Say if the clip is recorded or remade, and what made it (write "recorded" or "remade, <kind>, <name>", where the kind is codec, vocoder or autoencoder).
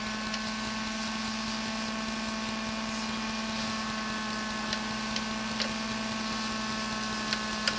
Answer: recorded